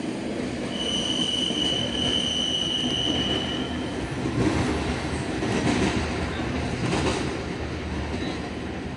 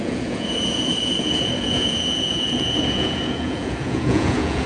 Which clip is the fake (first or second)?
second